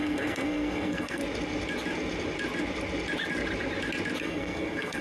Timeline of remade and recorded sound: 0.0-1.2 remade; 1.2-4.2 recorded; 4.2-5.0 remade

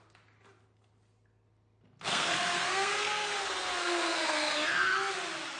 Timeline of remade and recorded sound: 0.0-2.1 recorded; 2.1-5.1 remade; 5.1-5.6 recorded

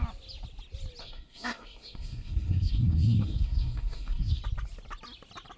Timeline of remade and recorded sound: 0.0-1.0 recorded; 1.0-4.4 remade; 4.4-5.6 recorded

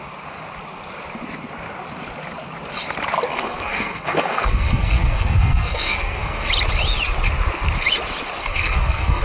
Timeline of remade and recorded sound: 0.0-3.3 recorded; 3.3-6.5 remade; 6.5-8.4 recorded; 8.4-9.2 remade

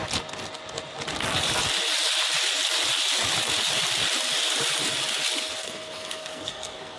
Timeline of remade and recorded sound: 0.0-5.6 recorded; 5.6-7.0 remade

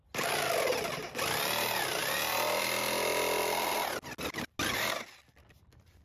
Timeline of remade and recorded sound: 0.0-6.0 recorded

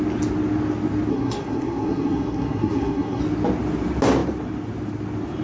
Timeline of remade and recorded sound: 0.0-1.1 recorded; 1.1-3.2 remade; 3.2-5.4 recorded

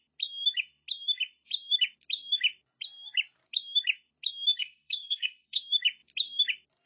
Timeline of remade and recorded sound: 0.0-4.5 recorded; 4.5-5.6 remade; 5.6-6.9 recorded